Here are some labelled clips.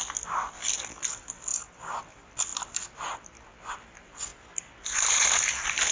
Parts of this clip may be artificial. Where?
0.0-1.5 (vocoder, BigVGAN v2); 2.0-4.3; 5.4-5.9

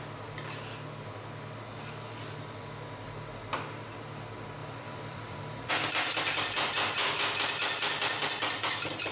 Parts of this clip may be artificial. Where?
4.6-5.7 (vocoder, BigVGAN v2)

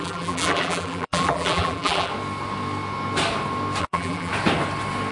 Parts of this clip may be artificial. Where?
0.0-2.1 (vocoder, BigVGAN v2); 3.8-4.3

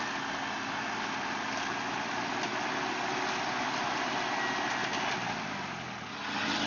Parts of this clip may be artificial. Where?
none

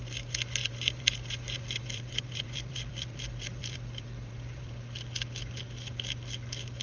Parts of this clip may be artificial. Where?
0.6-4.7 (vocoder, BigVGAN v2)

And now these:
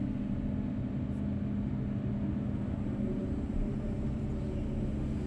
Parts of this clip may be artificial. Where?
3.2-4.2 (vocoder, BigVGAN v2)